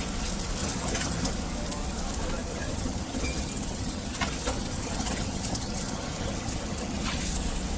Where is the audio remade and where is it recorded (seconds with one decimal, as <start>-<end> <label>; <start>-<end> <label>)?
0.0-0.6 recorded; 0.6-1.3 remade; 1.3-2.5 recorded; 2.5-7.2 remade; 7.2-7.8 recorded